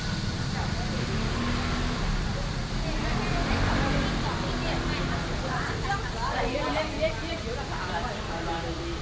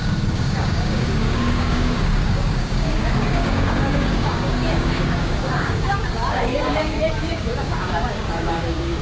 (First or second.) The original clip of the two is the first